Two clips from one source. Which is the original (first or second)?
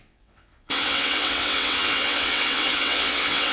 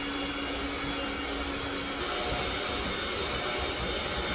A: second